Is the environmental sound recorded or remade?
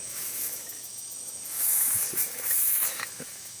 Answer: remade